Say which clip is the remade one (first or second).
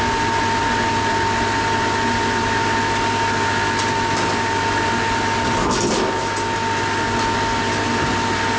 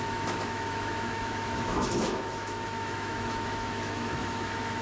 second